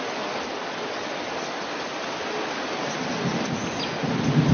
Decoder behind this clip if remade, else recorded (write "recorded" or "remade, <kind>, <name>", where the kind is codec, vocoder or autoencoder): recorded